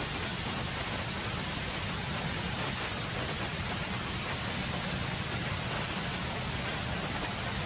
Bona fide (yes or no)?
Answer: yes